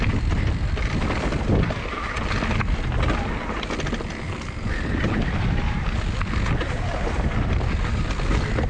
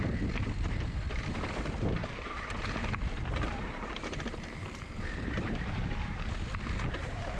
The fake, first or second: second